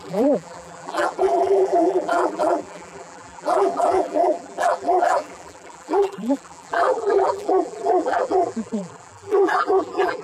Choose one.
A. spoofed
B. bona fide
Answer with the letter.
A